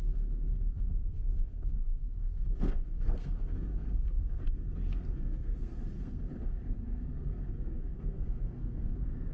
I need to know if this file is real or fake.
fake